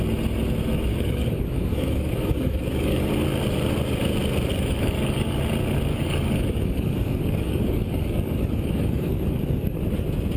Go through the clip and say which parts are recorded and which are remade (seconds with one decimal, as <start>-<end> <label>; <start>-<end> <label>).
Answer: 0.0-0.9 recorded; 0.9-3.1 remade; 3.1-4.5 recorded; 4.5-5.4 remade; 5.4-5.9 recorded; 5.9-9.8 remade; 9.8-10.4 recorded

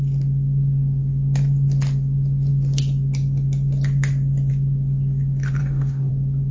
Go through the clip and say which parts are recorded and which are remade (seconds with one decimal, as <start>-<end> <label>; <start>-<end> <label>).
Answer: 0.0-5.6 recorded; 5.6-6.1 remade; 6.1-6.5 recorded

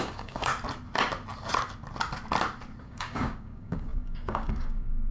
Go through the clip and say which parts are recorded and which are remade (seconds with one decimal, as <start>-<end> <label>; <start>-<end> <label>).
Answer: 0.0-0.5 remade; 0.5-2.8 recorded; 2.8-5.1 remade